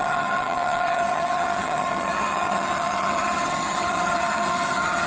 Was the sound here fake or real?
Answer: fake